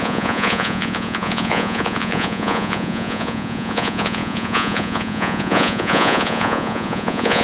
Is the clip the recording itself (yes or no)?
no